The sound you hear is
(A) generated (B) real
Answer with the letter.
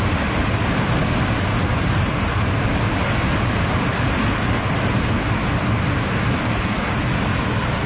B